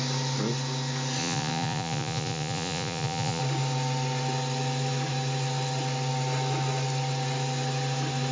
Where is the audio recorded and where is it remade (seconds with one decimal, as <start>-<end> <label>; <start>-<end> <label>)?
0.0-1.2 recorded; 1.2-3.4 remade; 3.4-8.3 recorded